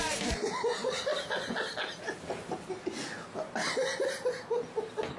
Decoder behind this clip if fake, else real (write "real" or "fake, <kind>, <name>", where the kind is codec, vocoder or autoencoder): real